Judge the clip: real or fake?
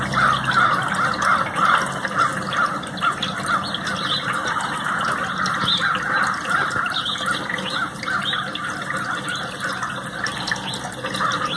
real